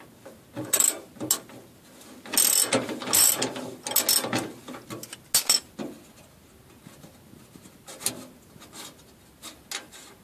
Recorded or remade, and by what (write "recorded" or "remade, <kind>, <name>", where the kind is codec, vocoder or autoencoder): recorded